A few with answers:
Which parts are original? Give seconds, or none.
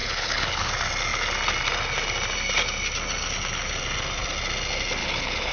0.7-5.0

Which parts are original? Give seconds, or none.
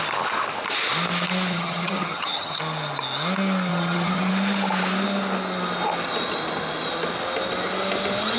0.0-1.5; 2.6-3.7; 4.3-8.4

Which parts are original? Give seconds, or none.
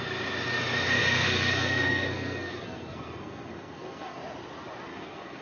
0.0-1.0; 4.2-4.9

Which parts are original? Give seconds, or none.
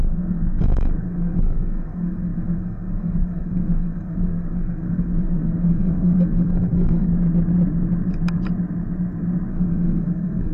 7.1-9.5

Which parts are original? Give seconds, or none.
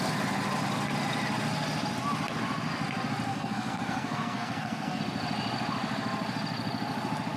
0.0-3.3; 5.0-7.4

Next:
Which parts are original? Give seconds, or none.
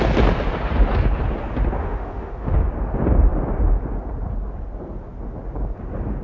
0.0-1.8; 2.6-6.2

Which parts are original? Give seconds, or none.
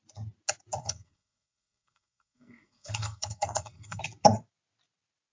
0.0-0.8; 4.0-5.3